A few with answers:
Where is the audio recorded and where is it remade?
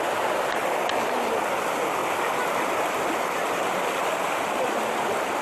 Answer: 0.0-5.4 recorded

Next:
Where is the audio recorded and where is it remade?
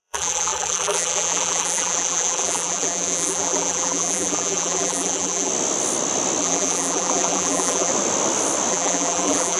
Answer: 0.0-5.5 remade; 5.5-6.4 recorded; 6.4-7.9 remade; 7.9-8.7 recorded; 8.7-9.6 remade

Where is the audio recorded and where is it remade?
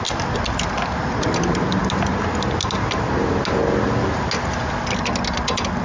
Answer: 0.0-5.8 recorded